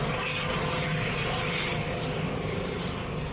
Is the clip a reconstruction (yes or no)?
no